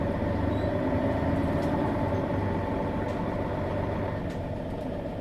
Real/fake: fake